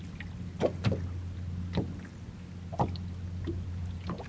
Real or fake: real